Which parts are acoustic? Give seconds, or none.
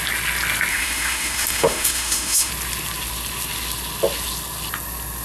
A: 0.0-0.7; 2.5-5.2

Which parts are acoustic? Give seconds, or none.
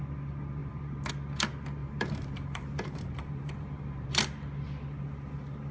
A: 0.0-0.6; 1.1-1.8; 4.1-5.7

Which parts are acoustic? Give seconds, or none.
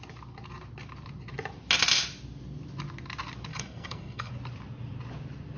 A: 0.0-3.5; 4.3-5.6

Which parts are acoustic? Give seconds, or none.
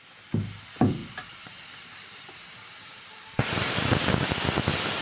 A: 0.0-1.0; 4.0-5.0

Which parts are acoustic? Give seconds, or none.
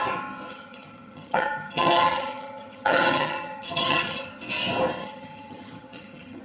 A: 0.0-0.5; 4.3-5.0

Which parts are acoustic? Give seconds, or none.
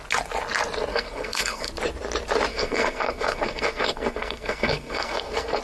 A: 0.0-0.9; 1.7-2.5